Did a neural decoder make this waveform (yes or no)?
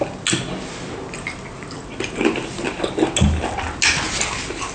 no